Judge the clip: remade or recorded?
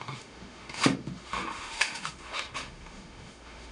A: remade